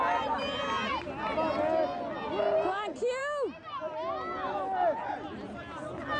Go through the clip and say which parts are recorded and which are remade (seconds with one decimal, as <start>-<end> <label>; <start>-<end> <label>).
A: 0.0-6.2 recorded